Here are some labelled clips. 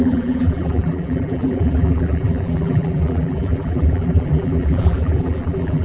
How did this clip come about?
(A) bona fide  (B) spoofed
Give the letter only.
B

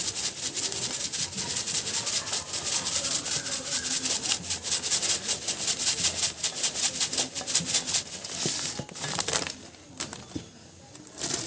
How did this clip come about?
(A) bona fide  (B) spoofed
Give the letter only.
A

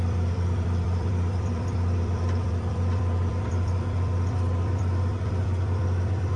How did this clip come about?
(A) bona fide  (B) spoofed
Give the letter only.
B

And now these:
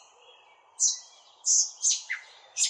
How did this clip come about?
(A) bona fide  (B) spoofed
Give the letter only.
B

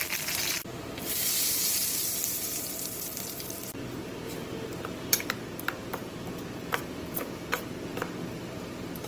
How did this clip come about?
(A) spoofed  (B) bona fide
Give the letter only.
A